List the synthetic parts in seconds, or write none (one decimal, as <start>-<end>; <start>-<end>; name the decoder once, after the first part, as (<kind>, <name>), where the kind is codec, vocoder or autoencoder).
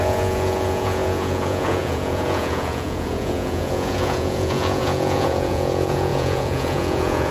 0.0-7.3 (vocoder, Vocos)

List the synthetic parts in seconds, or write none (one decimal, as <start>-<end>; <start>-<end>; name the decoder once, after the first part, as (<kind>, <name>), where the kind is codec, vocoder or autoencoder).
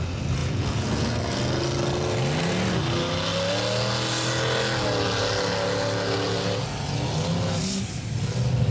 0.4-1.1 (vocoder, Vocos)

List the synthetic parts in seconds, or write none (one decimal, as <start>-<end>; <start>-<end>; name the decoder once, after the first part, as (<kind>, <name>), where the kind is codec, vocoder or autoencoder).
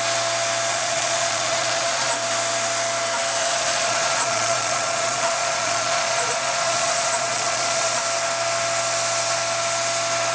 0.7-2.1 (vocoder, Vocos); 3.4-8.0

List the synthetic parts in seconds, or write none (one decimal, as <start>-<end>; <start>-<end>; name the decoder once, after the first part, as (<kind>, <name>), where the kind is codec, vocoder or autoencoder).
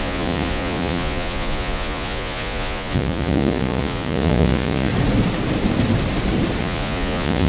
0.0-4.9 (vocoder, Vocos); 6.6-7.5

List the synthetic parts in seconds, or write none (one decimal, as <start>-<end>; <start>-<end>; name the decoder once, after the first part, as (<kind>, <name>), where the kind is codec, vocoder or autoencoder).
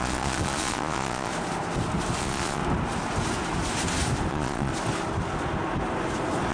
0.0-1.3 (vocoder, Vocos); 2.2-2.6; 4.3-4.7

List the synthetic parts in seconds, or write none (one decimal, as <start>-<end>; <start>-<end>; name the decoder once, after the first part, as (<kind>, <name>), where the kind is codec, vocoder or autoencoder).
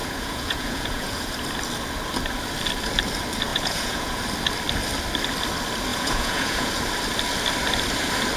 0.0-1.3 (vocoder, Vocos); 3.5-4.2; 5.9-6.7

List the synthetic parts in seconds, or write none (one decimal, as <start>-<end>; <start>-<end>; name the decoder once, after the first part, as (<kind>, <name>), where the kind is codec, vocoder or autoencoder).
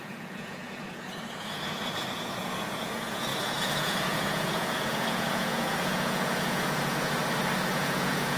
0.0-7.2 (vocoder, Vocos); 7.7-8.4